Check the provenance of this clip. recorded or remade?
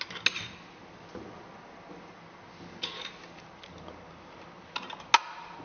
recorded